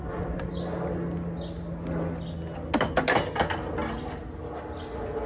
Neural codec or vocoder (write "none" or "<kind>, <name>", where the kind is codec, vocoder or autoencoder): none